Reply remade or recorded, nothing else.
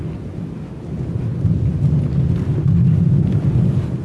recorded